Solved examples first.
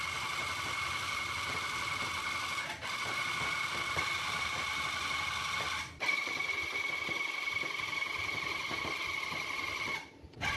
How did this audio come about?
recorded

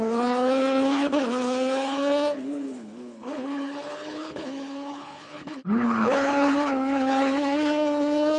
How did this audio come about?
remade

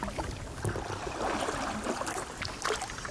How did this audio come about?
recorded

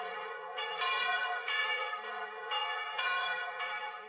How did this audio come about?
remade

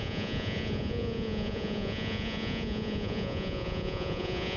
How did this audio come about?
remade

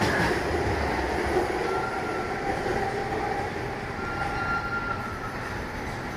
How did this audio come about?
recorded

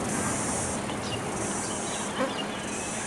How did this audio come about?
recorded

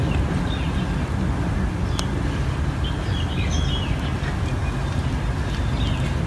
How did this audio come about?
recorded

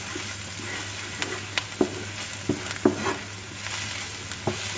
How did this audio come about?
recorded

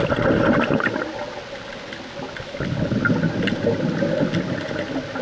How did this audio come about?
recorded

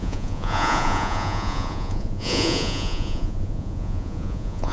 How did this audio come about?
remade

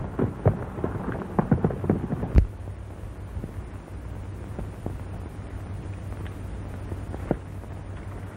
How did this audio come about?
recorded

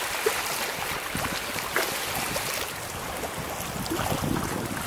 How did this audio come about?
recorded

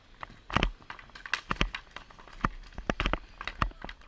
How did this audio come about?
recorded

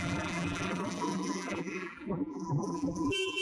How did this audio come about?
remade